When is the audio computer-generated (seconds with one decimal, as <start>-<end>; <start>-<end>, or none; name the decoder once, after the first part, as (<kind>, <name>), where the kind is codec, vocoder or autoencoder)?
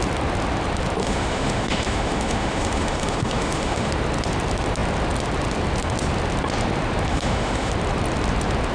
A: 1.0-3.9 (autoencoder, DAC-VAE); 7.1-7.7